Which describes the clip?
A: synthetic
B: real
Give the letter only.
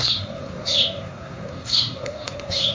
A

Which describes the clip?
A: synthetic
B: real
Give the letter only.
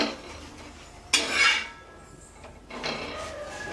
B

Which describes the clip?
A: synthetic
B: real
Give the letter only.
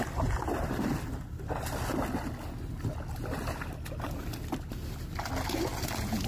B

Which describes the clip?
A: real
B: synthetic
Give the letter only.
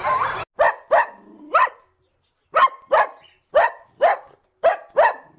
A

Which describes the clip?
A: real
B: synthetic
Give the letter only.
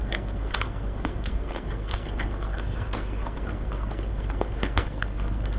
B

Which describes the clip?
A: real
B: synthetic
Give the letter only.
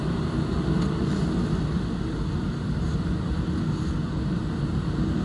A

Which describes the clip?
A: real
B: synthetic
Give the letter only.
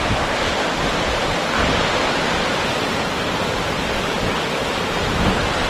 A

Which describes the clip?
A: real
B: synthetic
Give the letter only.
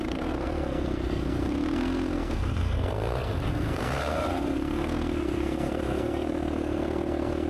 B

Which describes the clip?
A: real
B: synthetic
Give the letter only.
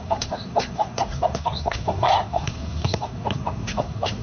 B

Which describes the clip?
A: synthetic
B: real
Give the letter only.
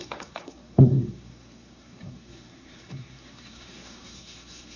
A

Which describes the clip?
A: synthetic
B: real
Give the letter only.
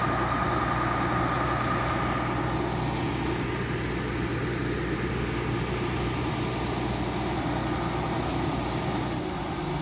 B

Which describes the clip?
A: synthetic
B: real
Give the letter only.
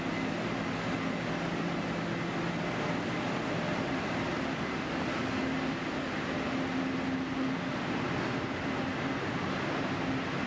B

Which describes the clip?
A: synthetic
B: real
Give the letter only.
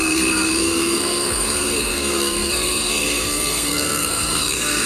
A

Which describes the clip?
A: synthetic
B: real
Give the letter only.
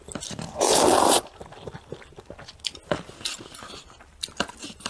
B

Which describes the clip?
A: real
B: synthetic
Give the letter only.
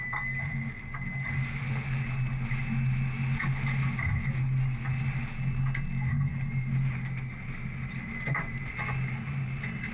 A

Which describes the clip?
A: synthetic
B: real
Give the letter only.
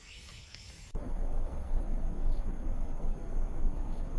A